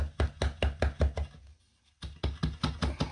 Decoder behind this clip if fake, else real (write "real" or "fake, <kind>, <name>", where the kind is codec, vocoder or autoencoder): real